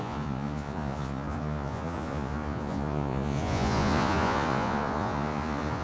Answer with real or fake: fake